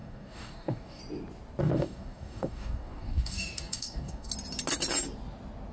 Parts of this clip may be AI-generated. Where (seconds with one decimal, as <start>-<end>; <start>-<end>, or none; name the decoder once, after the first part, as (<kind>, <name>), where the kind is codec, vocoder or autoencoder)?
0.0-1.0 (codec, DAC); 1.6-4.3